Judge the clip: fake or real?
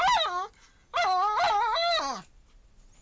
real